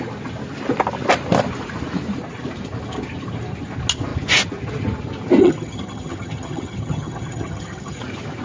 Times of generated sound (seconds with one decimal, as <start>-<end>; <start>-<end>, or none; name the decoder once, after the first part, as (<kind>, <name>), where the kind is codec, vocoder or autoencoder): 5.4-8.0 (vocoder, HiFi-GAN)